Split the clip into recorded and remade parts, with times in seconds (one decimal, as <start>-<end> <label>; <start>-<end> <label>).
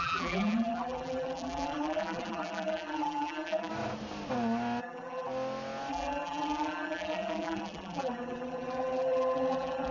0.0-3.7 remade; 3.7-4.8 recorded; 4.8-5.3 remade; 5.3-5.9 recorded; 5.9-9.9 remade